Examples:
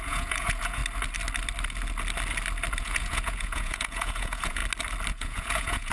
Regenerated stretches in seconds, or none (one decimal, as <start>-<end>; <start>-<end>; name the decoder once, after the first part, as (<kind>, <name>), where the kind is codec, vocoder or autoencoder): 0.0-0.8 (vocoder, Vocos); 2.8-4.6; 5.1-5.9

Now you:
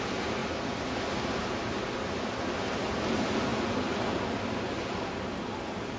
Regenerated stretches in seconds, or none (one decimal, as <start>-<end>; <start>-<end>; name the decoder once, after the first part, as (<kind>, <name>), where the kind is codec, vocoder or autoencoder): none

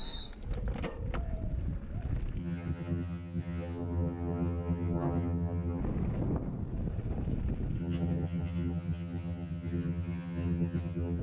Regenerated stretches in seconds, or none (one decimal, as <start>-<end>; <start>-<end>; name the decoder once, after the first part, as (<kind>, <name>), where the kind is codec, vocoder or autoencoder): 2.4-5.8 (vocoder, HiFi-GAN); 7.8-11.2